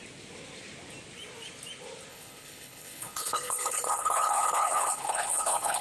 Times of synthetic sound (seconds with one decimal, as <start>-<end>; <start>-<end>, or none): 2.1-5.8